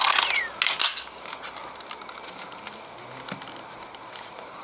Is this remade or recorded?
recorded